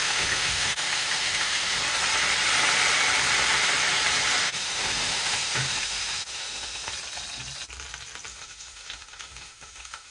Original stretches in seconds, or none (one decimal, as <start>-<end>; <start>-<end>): 1.8-4.4; 6.9-8.3